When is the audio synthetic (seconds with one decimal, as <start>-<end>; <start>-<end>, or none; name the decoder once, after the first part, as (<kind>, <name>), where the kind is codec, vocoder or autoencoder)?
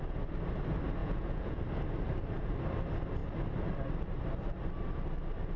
1.0-1.6 (vocoder, Vocos)